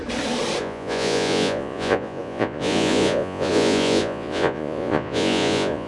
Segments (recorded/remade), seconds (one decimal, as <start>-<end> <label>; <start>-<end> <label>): 0.0-0.6 recorded; 0.6-5.9 remade